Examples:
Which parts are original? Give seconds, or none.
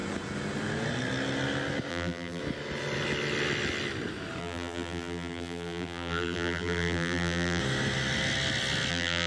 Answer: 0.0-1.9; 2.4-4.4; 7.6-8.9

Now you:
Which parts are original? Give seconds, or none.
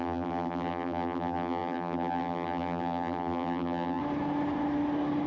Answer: 4.0-5.3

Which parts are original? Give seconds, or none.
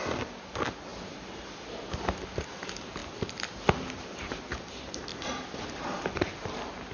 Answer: 0.0-0.9; 1.9-5.1; 6.2-6.9